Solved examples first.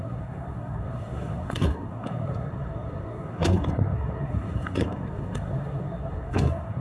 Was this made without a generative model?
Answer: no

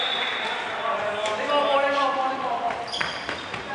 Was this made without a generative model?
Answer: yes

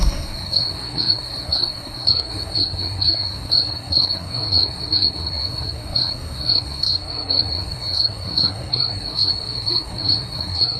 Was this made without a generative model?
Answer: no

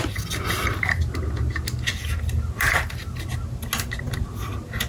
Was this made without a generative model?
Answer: yes